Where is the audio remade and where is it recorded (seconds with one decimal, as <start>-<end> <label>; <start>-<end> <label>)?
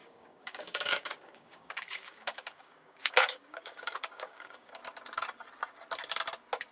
0.0-4.8 remade; 4.8-6.7 recorded